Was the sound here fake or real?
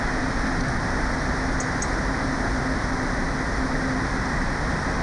real